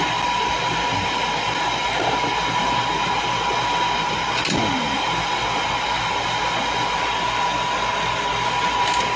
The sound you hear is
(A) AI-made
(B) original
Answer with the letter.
B